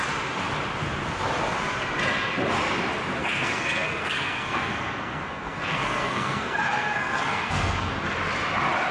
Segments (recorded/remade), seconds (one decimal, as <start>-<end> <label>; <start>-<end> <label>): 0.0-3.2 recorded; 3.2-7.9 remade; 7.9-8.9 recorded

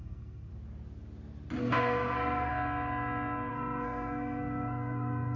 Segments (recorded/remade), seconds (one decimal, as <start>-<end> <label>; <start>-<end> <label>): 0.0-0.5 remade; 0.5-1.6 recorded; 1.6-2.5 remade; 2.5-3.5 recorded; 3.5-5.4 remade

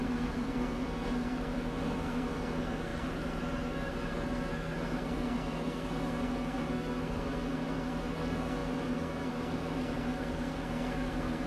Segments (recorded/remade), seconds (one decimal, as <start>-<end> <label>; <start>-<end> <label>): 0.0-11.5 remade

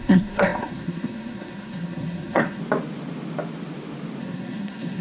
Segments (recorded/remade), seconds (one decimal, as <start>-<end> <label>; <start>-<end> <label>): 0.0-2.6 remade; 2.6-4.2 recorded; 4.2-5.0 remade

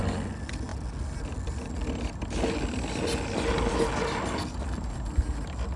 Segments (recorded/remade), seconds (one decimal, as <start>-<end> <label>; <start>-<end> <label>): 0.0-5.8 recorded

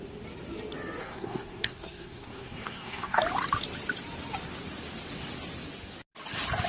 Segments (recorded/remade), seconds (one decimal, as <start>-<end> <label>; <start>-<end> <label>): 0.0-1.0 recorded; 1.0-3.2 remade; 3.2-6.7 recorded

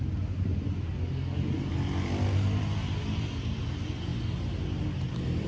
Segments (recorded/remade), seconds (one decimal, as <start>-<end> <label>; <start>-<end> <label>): 0.0-5.5 recorded

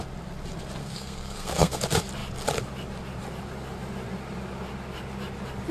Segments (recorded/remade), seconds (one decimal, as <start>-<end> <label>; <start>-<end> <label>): 0.0-0.8 recorded; 0.8-1.8 remade; 1.8-5.7 recorded